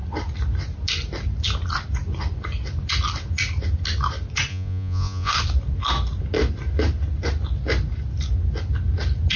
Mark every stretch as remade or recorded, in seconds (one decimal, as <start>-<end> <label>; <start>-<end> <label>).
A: 0.0-4.5 recorded; 4.5-5.3 remade; 5.3-9.4 recorded